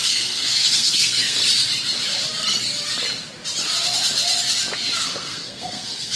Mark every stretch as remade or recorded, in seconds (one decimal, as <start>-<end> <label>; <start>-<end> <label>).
0.0-1.4 remade; 1.4-5.0 recorded; 5.0-6.2 remade